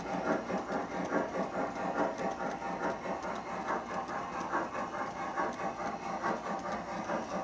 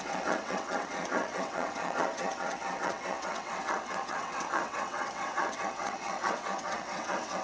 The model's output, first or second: second